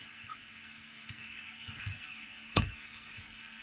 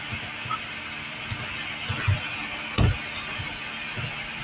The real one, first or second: second